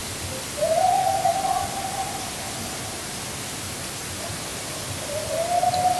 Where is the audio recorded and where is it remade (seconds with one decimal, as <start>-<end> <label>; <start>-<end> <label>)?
0.0-6.0 recorded